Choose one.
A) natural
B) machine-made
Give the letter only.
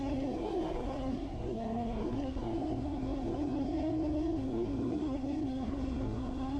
B